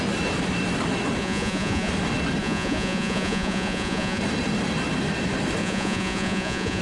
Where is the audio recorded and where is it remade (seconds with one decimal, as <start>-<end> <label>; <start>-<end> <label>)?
0.0-1.2 recorded; 1.2-1.9 remade; 1.9-2.4 recorded; 2.4-4.2 remade; 4.2-5.6 recorded; 5.6-6.8 remade